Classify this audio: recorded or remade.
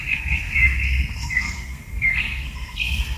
remade